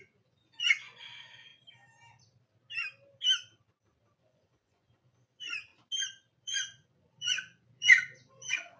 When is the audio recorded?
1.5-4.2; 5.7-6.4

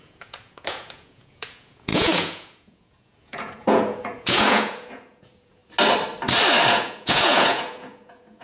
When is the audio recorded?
5.6-6.7